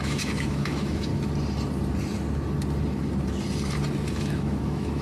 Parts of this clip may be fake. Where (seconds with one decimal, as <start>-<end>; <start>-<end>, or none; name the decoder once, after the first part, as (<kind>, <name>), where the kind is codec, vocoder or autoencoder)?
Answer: 0.0-1.1 (autoencoder, DAC-VAE); 4.1-5.0